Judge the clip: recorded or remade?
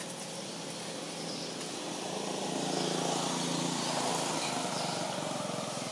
recorded